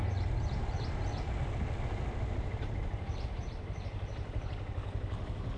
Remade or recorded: recorded